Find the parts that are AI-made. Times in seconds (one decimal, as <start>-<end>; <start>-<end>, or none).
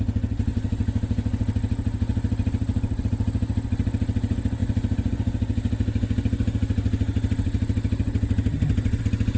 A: none